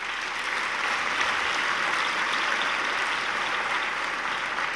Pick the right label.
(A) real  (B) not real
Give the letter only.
A